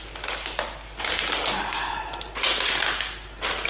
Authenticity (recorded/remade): recorded